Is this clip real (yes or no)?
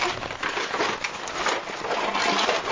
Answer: yes